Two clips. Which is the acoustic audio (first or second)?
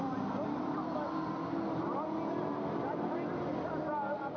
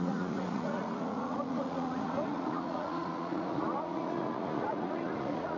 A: first